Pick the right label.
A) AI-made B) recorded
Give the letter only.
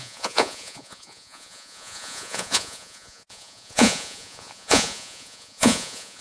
A